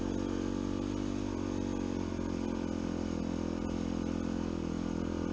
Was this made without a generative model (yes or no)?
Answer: yes